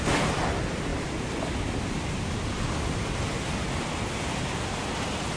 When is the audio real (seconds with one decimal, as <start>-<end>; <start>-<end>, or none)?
0.0-5.4